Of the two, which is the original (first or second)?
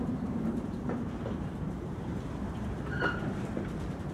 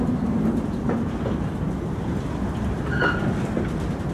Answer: second